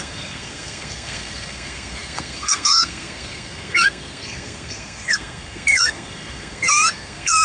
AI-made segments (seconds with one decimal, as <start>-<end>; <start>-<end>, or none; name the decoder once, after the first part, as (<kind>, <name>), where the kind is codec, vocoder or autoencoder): 0.0-7.4 (codec, SNAC)

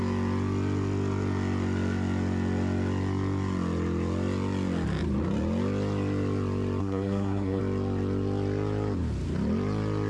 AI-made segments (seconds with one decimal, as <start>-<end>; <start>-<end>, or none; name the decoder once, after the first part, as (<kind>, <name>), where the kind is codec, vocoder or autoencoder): 6.8-7.6 (codec, SNAC)

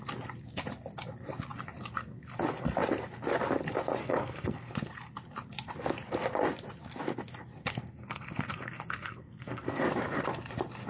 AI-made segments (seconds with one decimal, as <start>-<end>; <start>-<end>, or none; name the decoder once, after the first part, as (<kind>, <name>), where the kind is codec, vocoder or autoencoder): 4.0-4.7 (codec, SNAC); 7.7-9.8

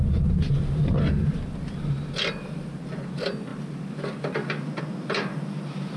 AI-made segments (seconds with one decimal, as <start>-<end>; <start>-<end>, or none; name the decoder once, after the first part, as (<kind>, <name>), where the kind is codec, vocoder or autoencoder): none

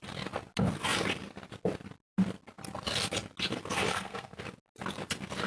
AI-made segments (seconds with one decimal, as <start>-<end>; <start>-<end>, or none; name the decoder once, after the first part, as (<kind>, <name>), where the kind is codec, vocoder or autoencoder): 3.9-4.4 (codec, SNAC)